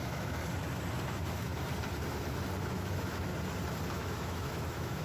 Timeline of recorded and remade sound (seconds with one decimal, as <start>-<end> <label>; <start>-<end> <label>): 0.0-0.4 remade; 0.4-1.0 recorded; 1.0-1.5 remade; 1.5-2.6 recorded; 2.6-3.3 remade; 3.3-3.9 recorded; 3.9-5.0 remade